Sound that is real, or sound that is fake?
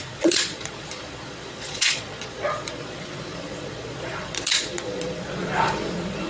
fake